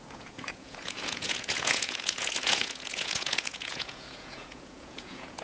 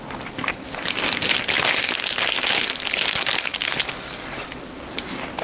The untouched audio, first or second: second